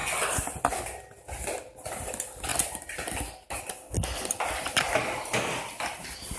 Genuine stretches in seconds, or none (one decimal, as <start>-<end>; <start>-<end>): 0.0-6.4